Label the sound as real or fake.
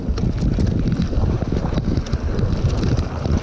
real